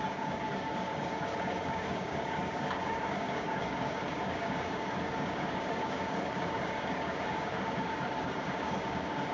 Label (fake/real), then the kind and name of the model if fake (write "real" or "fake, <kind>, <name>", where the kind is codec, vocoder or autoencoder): fake, codec, DAC